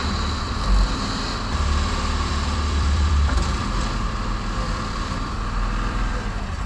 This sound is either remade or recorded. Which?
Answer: remade